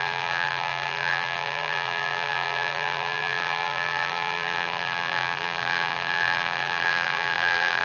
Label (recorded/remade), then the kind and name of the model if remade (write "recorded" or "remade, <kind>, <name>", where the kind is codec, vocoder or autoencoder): remade, vocoder, BigVGAN v2